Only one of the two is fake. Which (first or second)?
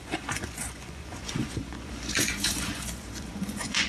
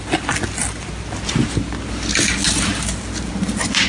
first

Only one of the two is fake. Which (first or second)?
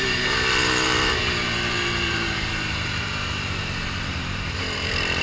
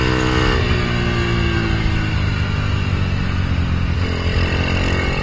first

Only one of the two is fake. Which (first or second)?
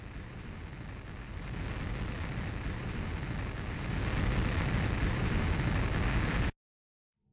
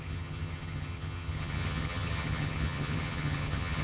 second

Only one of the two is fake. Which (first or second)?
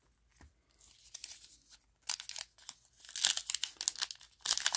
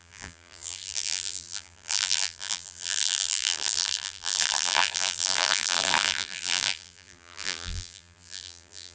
second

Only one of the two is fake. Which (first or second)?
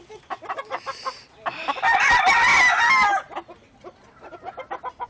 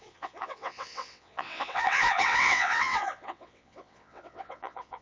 second